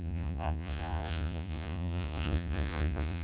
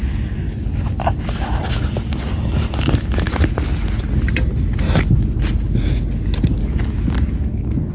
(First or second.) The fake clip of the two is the first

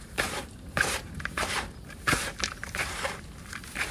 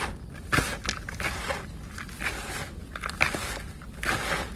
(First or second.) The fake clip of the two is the first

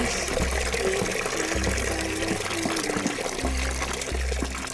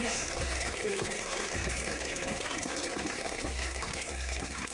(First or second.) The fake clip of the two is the second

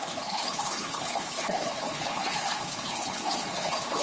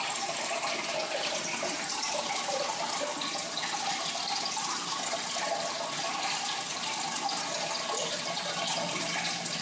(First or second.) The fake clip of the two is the first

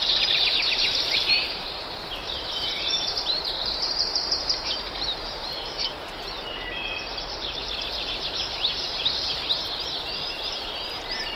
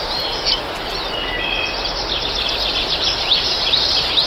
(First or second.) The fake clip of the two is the first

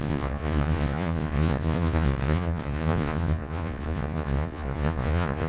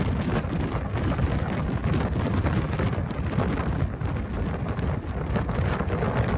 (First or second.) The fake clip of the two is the first